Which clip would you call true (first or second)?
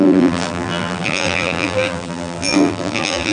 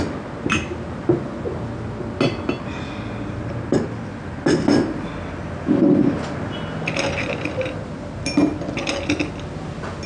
second